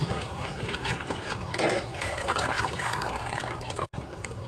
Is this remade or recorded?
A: remade